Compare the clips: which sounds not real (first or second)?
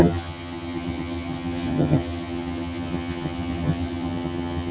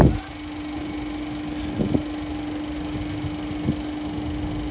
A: first